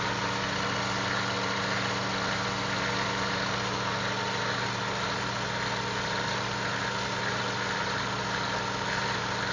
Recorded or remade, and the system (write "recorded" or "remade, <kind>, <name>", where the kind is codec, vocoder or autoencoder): recorded